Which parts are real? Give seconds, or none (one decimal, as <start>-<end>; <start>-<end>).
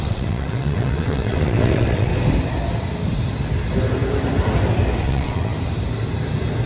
2.1-5.0; 5.5-6.7